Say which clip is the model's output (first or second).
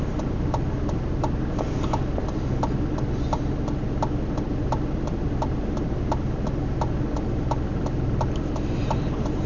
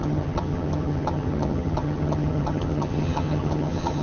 second